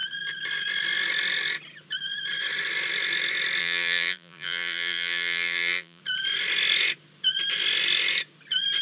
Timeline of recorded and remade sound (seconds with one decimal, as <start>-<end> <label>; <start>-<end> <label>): 0.0-3.6 recorded; 3.6-6.0 remade; 6.0-8.8 recorded